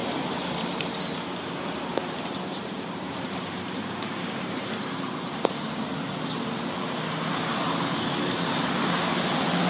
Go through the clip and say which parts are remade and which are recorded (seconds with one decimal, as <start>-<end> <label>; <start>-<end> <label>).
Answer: 0.0-0.8 remade; 0.8-1.9 recorded; 1.9-6.1 remade; 6.1-9.7 recorded